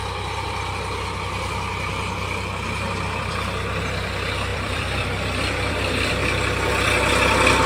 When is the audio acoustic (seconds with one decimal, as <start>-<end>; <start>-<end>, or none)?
0.0-4.5; 6.1-7.7